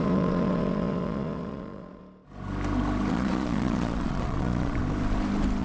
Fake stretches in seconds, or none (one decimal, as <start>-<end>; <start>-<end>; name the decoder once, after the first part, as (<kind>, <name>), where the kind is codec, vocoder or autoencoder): 0.0-2.0 (vocoder, Vocos); 3.1-4.8